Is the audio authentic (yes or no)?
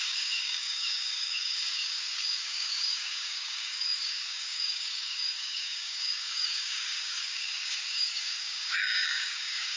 no